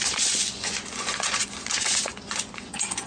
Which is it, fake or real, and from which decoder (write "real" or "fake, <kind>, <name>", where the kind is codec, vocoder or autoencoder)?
fake, vocoder, Vocos